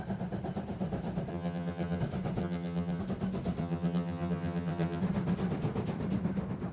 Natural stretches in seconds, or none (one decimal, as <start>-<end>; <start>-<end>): 0.0-1.3; 2.0-2.4; 3.0-3.6; 5.0-6.7